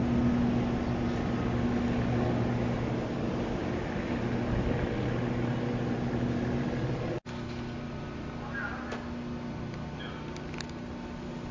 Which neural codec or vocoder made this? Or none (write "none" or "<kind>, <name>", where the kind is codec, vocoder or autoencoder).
none